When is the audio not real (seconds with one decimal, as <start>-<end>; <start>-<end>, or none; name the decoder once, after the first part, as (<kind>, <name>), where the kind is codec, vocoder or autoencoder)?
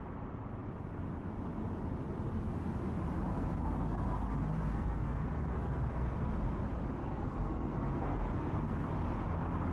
3.3-6.6 (codec, SNAC); 7.0-8.9